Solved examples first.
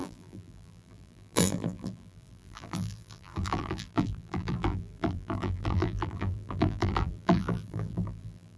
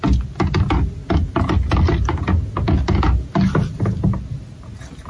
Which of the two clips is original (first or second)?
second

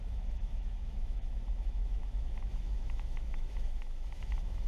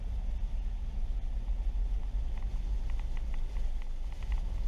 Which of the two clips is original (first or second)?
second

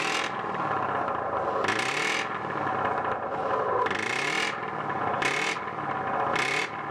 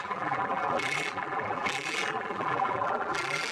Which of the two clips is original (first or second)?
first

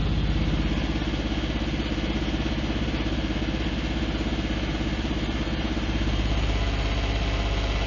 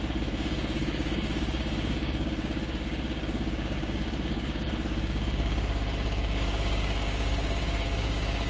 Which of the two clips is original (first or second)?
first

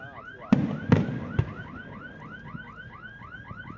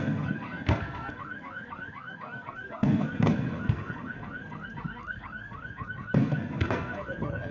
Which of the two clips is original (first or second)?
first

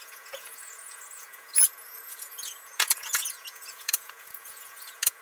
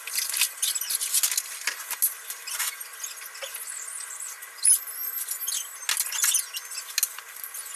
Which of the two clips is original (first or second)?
second